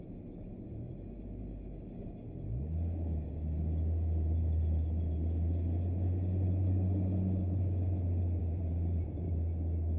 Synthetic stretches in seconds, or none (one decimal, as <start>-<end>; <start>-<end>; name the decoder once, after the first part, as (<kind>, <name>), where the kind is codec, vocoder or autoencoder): 8.4-9.3 (vocoder, BigVGAN v2)